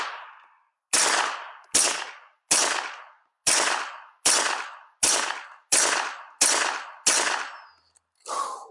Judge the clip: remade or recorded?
recorded